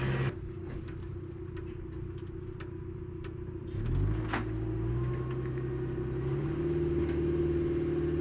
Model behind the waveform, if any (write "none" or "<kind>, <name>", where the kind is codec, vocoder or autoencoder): none